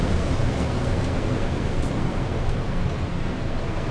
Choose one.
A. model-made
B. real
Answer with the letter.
A